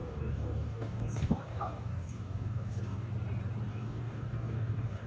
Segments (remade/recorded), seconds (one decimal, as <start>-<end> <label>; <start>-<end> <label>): 0.0-3.1 remade; 3.1-3.7 recorded; 3.7-5.1 remade